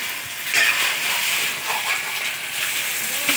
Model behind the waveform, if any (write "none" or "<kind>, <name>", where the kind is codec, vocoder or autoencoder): none